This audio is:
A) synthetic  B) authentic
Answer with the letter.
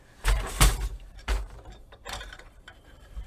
A